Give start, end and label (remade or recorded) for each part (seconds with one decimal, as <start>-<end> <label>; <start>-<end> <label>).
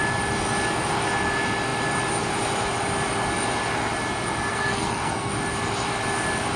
0.0-4.5 recorded; 4.5-5.3 remade; 5.3-6.6 recorded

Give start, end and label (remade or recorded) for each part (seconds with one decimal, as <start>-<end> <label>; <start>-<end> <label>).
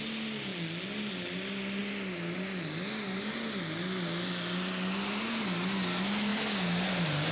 0.0-7.3 recorded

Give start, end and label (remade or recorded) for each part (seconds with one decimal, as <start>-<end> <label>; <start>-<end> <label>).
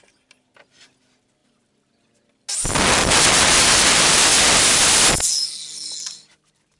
0.0-6.8 recorded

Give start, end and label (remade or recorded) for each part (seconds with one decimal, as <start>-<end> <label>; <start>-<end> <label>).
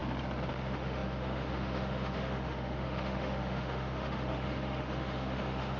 0.0-0.5 recorded; 0.5-5.8 remade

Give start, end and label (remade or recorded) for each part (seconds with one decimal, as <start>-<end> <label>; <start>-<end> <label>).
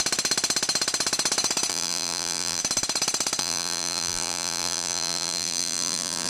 0.0-1.7 recorded; 1.7-2.6 remade; 2.6-3.4 recorded; 3.4-6.3 remade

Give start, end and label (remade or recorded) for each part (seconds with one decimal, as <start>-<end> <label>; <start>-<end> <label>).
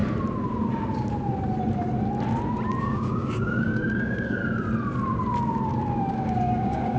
0.0-2.8 recorded; 2.8-4.4 remade; 4.4-6.0 recorded; 6.0-7.0 remade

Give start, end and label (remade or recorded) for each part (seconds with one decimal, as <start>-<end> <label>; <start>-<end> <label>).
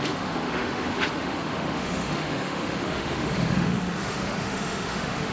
0.0-5.3 remade